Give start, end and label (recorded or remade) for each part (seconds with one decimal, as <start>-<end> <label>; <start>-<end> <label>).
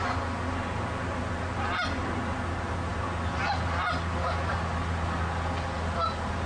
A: 0.0-6.5 recorded